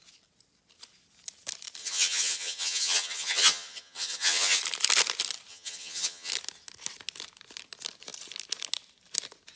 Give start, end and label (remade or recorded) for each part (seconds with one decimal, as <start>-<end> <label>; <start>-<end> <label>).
0.0-1.8 recorded; 1.8-4.6 remade; 4.6-5.5 recorded; 5.5-6.3 remade; 6.3-9.6 recorded